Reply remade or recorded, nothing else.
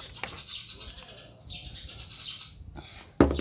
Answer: recorded